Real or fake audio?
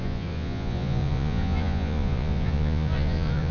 fake